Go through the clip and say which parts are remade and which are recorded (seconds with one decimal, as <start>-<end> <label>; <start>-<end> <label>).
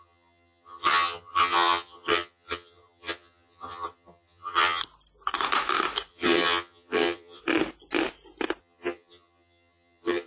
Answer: 0.0-4.8 remade; 4.8-6.1 recorded; 6.1-7.4 remade; 7.4-8.6 recorded; 8.6-10.3 remade